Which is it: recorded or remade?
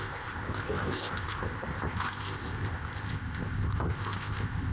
remade